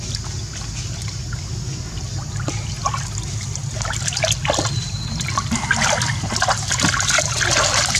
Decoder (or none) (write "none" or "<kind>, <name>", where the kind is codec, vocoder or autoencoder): none